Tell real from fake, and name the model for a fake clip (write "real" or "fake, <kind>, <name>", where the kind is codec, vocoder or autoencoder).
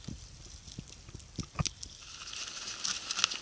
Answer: real